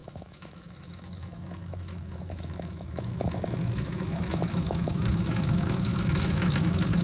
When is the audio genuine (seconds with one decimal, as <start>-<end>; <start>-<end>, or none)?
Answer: none